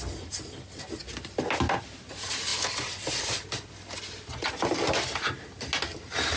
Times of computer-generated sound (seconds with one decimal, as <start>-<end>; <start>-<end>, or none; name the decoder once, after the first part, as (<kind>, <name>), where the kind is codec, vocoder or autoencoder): none